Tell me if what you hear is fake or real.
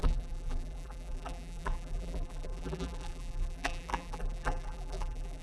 fake